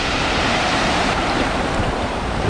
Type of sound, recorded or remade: remade